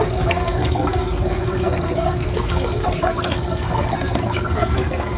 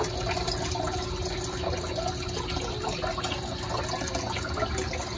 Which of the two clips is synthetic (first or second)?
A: first